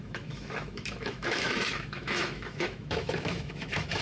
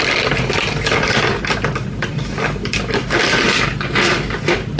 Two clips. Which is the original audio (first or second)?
second